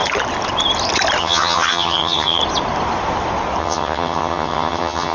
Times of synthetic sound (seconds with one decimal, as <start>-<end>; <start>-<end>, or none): 1.2-2.4; 3.6-5.1